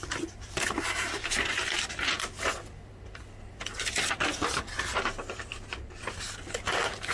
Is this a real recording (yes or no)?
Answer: no